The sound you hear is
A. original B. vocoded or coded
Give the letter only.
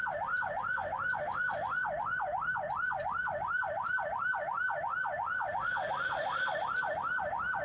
A